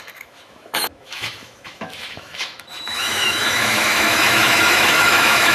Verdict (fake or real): fake